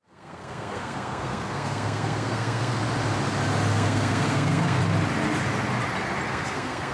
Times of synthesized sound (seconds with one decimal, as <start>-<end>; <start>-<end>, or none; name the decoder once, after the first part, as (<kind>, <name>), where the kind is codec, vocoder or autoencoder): 0.0-2.8 (codec, SNAC); 3.7-4.8; 6.3-6.9